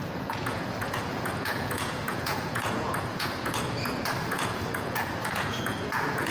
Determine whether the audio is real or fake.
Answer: fake